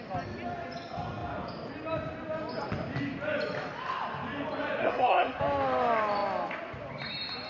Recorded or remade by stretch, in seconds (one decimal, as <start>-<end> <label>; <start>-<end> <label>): 0.0-4.8 recorded; 4.8-5.4 remade; 5.4-7.5 recorded